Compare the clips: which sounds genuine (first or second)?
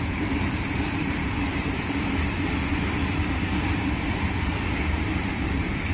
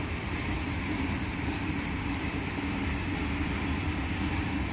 second